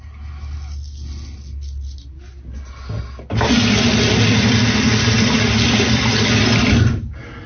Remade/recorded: recorded